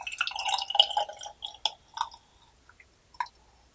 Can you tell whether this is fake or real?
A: real